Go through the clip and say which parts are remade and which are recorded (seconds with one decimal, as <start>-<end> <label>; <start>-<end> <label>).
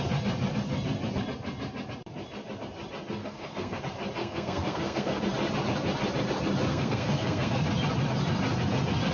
0.0-3.2 recorded; 3.2-3.8 remade; 3.8-4.2 recorded; 4.2-5.2 remade; 5.2-6.7 recorded; 6.7-7.6 remade; 7.6-9.1 recorded